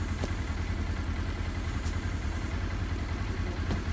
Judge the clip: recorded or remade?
remade